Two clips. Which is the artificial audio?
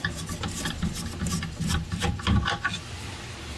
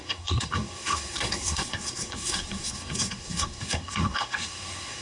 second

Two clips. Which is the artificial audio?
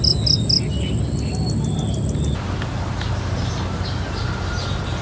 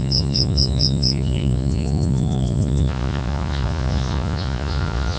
second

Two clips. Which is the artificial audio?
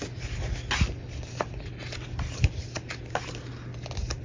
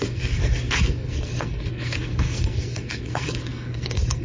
second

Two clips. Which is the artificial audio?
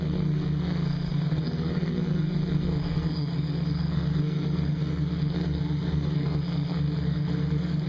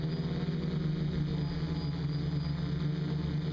first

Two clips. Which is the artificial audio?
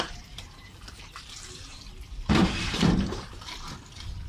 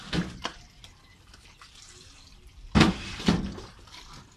first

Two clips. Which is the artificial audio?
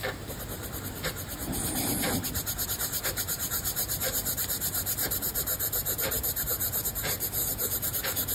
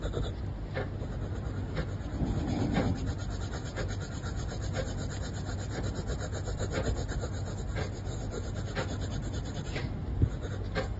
first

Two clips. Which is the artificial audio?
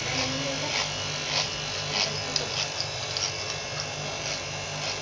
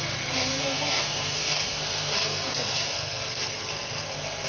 second